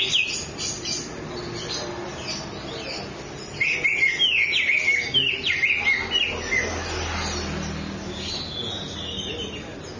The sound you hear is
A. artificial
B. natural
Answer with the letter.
B